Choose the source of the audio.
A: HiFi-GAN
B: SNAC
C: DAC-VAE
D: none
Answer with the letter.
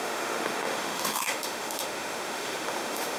C